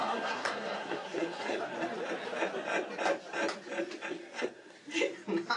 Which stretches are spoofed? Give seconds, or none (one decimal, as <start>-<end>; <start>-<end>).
0.0-1.6; 4.1-4.8